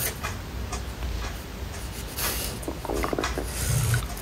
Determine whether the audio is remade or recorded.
recorded